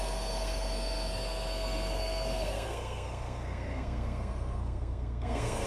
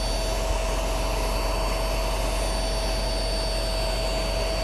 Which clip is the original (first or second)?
second